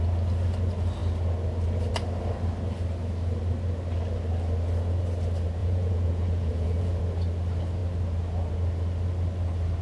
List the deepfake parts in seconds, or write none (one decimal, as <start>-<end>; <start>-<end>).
5.6-7.0